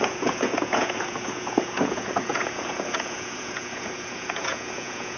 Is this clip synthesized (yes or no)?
yes